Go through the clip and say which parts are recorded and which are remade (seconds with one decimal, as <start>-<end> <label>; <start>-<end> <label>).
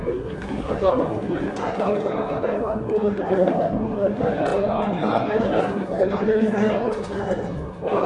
0.0-8.1 remade